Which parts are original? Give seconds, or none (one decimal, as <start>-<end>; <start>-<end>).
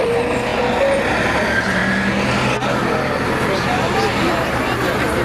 0.5-1.1; 1.8-4.3